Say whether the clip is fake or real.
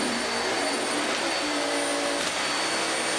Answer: real